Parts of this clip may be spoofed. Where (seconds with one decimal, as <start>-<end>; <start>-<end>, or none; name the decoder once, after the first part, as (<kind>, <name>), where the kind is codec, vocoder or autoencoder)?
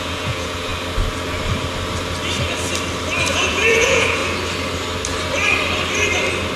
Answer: 0.0-0.7 (vocoder, Vocos); 3.3-4.2